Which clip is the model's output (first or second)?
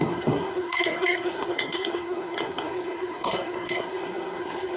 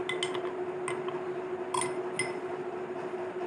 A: first